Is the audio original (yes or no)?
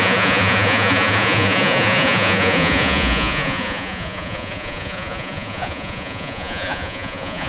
no